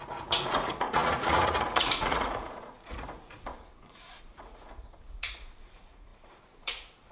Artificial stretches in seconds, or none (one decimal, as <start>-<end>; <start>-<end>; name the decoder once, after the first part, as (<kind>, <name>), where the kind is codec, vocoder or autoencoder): 0.0-7.1 (vocoder, Vocos)